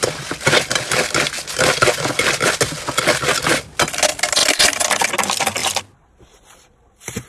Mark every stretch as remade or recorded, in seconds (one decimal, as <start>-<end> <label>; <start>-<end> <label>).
0.0-7.3 recorded